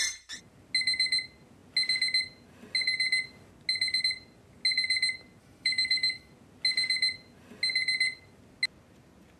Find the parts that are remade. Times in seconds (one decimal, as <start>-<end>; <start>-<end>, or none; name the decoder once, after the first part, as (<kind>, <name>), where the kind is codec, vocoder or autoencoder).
5.4-6.3 (autoencoder, DAC-VAE)

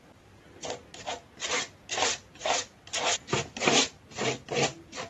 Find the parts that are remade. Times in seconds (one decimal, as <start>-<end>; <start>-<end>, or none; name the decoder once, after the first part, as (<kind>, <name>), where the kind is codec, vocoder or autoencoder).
none

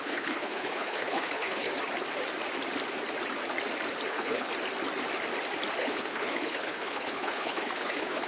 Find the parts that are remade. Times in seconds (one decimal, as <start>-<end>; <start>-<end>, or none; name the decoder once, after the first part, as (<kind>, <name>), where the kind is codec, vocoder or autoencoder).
0.0-1.7 (codec, HILCodec); 4.1-4.5; 5.8-8.3

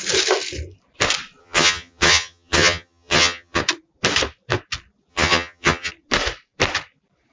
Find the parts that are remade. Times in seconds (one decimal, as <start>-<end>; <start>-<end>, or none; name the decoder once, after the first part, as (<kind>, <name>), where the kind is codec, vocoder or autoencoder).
1.4-3.6 (vocoder, HiFi-GAN); 5.1-5.9

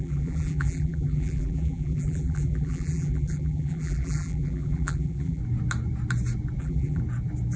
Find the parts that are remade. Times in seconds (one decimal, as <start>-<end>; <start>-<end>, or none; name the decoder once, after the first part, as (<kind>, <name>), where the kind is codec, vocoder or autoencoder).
0.0-5.4 (vocoder, BigVGAN v2); 6.6-7.0